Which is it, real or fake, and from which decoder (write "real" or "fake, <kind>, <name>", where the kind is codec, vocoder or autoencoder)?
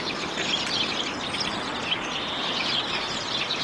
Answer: real